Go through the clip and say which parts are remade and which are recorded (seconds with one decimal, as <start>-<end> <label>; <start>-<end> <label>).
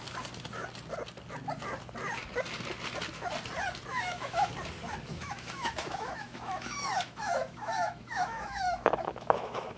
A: 0.0-3.9 recorded; 3.9-4.5 remade; 4.5-5.1 recorded; 5.1-9.8 remade